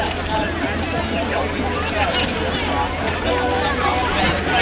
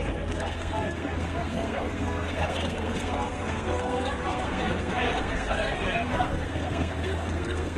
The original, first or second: first